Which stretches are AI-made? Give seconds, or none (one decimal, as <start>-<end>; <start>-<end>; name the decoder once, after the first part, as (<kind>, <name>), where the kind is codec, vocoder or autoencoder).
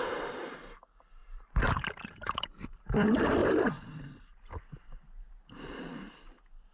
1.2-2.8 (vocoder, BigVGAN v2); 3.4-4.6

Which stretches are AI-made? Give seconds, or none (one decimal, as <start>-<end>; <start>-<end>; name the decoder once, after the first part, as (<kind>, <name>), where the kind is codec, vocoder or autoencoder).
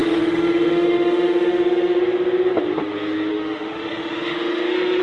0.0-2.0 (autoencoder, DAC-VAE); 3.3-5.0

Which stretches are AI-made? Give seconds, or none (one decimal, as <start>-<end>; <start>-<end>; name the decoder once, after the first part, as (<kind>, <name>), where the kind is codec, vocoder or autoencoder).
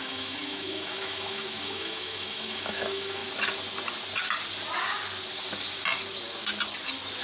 0.0-3.2 (autoencoder, DAC-VAE)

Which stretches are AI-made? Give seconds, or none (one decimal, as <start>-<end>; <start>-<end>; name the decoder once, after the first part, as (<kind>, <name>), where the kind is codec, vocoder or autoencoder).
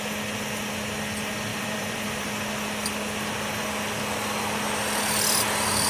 1.5-2.3 (vocoder, BigVGAN v2)